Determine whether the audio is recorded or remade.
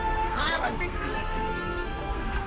remade